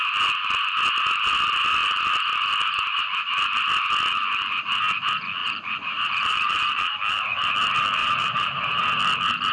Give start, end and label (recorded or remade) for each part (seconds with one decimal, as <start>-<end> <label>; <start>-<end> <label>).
0.0-5.4 recorded; 5.4-7.5 remade; 7.5-8.0 recorded; 8.0-8.8 remade; 8.8-9.5 recorded